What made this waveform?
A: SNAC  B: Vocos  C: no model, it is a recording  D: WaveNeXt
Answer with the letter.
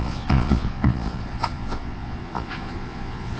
B